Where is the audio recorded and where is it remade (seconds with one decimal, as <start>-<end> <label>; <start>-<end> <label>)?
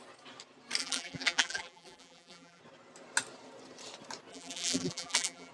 0.0-0.8 recorded; 0.8-2.6 remade; 2.6-4.3 recorded; 4.3-5.5 remade